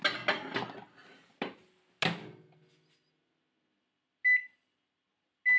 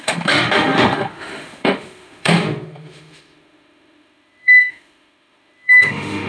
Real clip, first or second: first